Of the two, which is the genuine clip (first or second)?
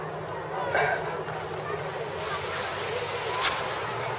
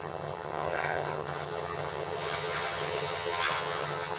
first